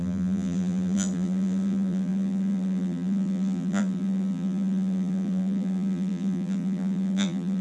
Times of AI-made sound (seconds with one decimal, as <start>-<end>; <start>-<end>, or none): 0.0-7.6